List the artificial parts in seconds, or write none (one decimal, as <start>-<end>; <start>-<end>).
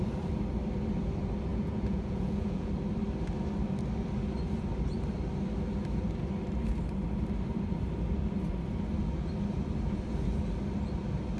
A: 1.5-2.7